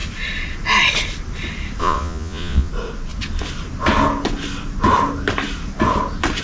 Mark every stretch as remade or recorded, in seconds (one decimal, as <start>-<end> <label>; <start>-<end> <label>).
0.0-1.8 recorded; 1.8-2.7 remade; 2.7-6.4 recorded